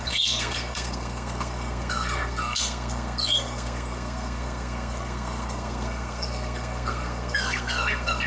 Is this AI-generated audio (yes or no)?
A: yes